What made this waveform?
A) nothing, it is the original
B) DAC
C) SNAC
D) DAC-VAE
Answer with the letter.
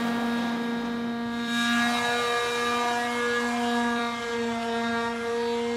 A